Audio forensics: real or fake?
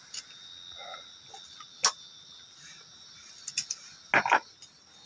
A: real